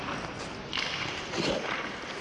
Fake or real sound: real